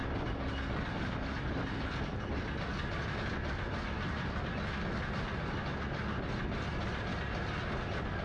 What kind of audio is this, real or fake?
real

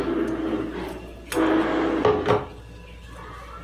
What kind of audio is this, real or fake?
real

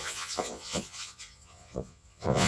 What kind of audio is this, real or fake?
fake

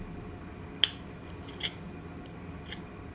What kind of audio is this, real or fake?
real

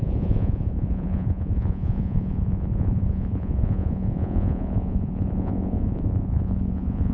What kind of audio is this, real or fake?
fake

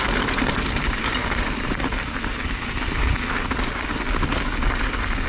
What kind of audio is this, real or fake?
real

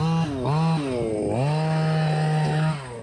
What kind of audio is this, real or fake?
real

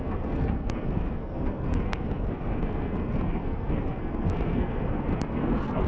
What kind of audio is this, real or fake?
fake